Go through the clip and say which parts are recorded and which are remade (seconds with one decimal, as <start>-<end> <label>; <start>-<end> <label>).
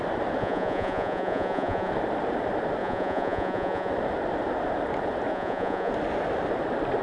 0.0-0.4 recorded; 0.4-1.9 remade; 1.9-2.8 recorded; 2.8-3.9 remade; 3.9-5.3 recorded; 5.3-5.9 remade; 5.9-7.0 recorded